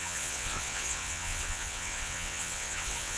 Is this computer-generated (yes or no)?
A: yes